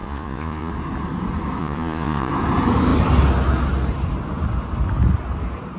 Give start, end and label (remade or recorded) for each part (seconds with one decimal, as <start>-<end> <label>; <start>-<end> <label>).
0.0-0.7 remade; 0.7-1.6 recorded; 1.6-2.3 remade; 2.3-5.8 recorded